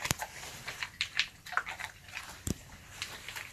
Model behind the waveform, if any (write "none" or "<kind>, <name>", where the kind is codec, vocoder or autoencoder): vocoder, BigVGAN v2